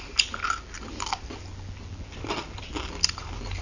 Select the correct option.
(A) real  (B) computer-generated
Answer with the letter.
A